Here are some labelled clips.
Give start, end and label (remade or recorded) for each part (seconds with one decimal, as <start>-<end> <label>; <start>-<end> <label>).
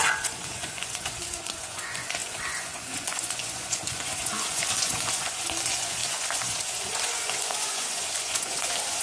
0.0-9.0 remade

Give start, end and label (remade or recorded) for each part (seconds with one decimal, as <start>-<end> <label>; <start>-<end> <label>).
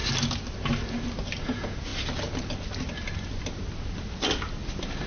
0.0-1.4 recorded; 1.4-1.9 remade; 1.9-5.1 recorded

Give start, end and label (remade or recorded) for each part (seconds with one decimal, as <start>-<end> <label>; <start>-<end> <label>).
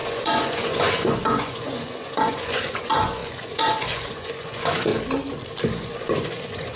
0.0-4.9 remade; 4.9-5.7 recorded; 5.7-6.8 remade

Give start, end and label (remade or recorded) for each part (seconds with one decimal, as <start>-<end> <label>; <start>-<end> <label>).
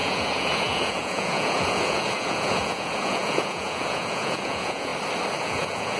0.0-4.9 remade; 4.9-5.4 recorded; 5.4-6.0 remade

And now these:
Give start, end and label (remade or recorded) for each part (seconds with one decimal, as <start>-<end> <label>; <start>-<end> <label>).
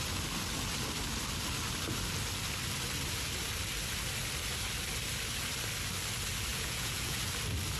0.0-6.5 recorded; 6.5-7.3 remade; 7.3-7.8 recorded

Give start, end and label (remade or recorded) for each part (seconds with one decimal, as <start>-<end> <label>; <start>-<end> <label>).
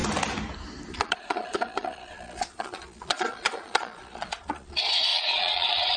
0.0-0.9 recorded; 0.9-6.0 remade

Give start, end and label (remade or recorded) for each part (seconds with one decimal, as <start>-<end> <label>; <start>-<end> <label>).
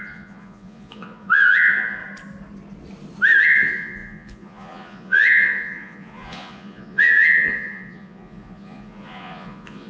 0.0-2.0 remade; 2.0-3.4 recorded; 3.4-9.9 remade